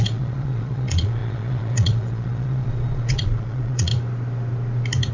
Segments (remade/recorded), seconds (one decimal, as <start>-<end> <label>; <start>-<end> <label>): 0.0-3.9 remade; 3.9-5.1 recorded